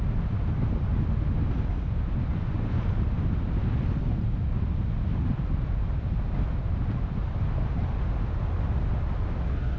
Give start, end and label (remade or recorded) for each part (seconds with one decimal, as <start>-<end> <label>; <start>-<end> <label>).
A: 0.0-2.3 recorded; 2.3-2.9 remade; 2.9-9.8 recorded